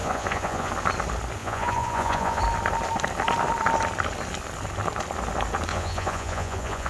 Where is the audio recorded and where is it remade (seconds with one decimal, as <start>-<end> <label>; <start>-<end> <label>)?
0.0-0.7 remade; 0.7-1.4 recorded; 1.4-2.4 remade; 2.4-5.7 recorded; 5.7-6.9 remade